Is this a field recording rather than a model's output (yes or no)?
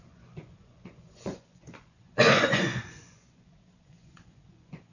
no